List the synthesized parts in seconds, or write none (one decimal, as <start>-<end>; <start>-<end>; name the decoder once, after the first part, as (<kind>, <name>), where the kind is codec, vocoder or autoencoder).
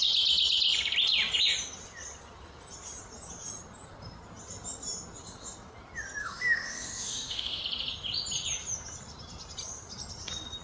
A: 6.2-7.6 (autoencoder, DAC-VAE)